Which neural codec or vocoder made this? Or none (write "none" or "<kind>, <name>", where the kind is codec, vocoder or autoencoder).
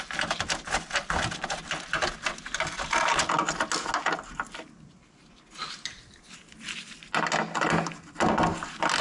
none